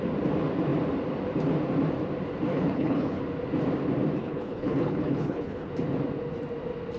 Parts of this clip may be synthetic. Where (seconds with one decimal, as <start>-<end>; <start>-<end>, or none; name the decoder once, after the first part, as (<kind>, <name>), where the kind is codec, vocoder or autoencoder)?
2.5-3.2 (codec, HILCodec); 4.2-5.7